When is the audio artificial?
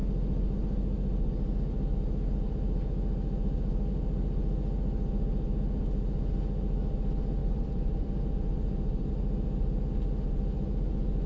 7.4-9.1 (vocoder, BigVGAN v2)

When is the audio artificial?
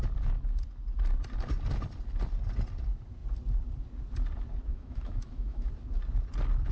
4.7-5.7 (autoencoder, DAC-VAE)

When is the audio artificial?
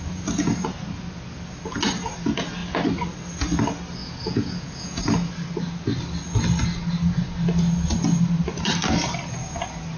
4.0-5.0 (vocoder, Vocos)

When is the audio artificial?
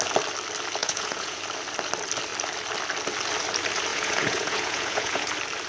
0.8-1.4 (vocoder, Vocos); 3.9-5.3